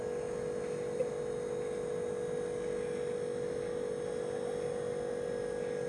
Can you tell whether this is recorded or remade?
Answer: recorded